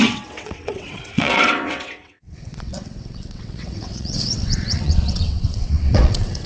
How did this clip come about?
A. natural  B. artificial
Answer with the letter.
B